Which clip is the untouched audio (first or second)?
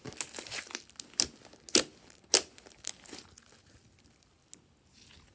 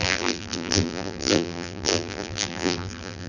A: first